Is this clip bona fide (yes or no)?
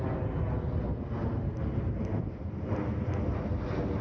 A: yes